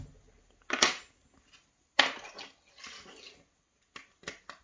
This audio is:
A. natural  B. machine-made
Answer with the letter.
A